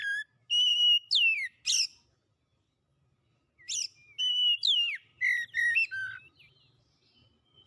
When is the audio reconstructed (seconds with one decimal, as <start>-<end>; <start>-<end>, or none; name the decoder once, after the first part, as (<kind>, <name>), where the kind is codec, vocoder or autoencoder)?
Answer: none